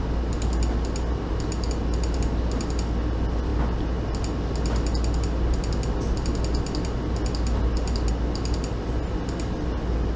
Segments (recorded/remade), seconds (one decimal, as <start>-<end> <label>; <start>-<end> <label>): 0.0-10.2 recorded